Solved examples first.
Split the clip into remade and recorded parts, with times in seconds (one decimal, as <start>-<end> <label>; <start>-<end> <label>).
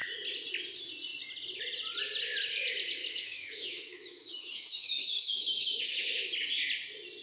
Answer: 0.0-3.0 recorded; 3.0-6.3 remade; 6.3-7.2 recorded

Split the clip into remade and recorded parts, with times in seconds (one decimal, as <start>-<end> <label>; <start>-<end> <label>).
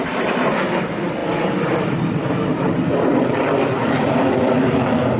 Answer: 0.0-5.2 recorded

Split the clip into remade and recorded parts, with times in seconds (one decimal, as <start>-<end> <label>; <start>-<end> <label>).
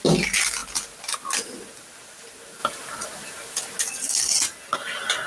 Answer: 0.0-5.3 recorded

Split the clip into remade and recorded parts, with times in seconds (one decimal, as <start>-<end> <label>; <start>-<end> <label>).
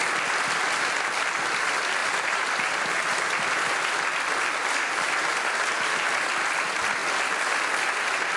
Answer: 0.0-8.4 recorded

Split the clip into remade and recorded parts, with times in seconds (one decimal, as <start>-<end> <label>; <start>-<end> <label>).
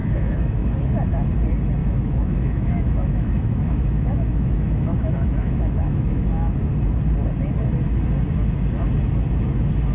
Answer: 0.0-0.7 remade; 0.7-1.8 recorded; 1.8-6.6 remade; 6.6-9.9 recorded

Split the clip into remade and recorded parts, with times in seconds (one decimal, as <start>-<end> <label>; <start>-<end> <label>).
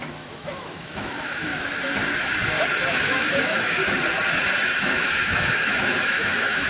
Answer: 0.0-1.5 remade; 1.5-2.9 recorded; 2.9-3.8 remade; 3.8-4.8 recorded; 4.8-6.7 remade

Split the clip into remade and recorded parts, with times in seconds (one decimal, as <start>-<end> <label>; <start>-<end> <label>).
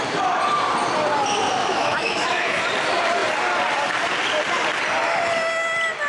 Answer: 0.0-1.6 recorded; 1.6-2.6 remade; 2.6-6.1 recorded